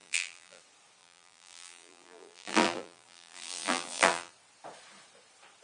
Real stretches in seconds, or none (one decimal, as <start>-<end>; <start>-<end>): 0.6-1.0; 4.3-5.6